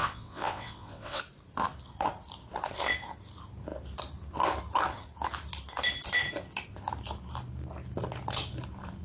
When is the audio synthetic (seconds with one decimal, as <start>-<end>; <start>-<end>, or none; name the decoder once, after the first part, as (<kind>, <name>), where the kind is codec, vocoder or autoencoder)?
0.0-1.2 (vocoder, WaveNeXt)